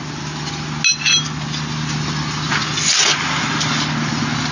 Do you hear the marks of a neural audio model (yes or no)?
no